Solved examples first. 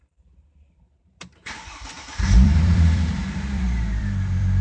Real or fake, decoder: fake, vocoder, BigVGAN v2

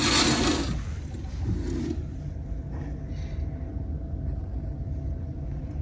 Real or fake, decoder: real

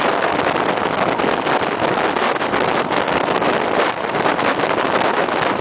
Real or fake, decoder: real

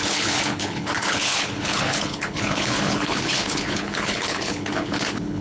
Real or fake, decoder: fake, codec, HILCodec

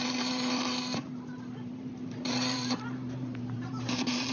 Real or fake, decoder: fake, vocoder, BigVGAN v2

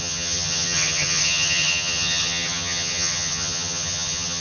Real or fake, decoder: fake, vocoder, HiFi-GAN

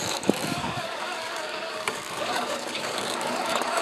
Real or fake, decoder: fake, codec, DAC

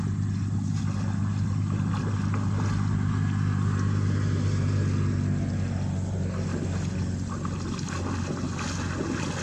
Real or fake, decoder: real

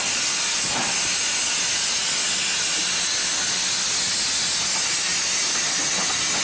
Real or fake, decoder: real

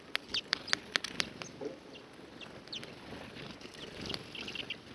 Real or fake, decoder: real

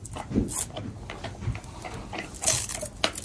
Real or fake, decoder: real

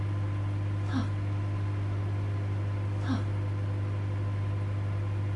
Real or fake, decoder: real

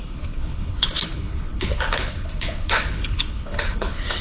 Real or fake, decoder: fake, codec, HILCodec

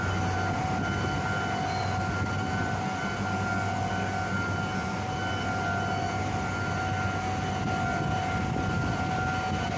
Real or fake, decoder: real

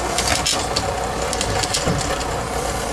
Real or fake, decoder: real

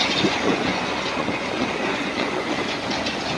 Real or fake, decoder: fake, vocoder, Vocos